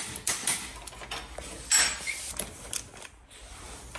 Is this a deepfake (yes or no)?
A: no